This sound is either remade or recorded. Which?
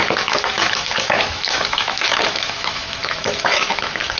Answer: remade